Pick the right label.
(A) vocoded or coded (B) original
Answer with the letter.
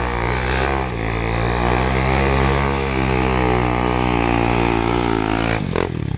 B